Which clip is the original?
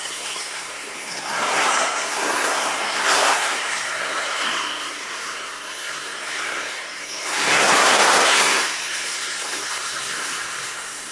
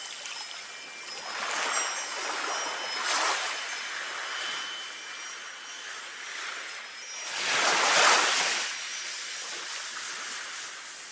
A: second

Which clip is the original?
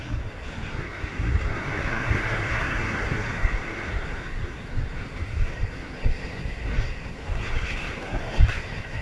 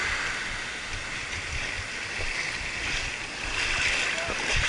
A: second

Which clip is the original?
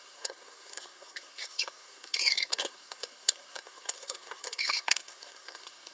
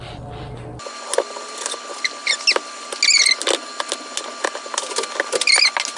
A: second